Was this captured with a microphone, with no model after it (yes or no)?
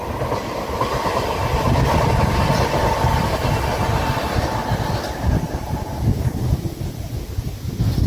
yes